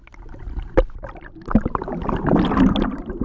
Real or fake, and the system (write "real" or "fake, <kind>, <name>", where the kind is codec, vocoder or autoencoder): real